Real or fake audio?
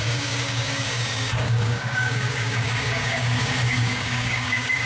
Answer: fake